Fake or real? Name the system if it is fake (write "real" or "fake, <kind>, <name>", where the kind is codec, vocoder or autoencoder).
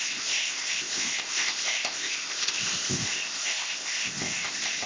fake, codec, ZipCodec